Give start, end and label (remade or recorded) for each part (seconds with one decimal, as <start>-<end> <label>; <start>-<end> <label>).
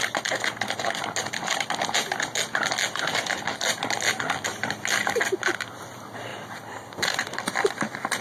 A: 0.0-4.5 recorded; 4.5-5.4 remade; 5.4-6.3 recorded; 6.3-7.5 remade; 7.5-8.2 recorded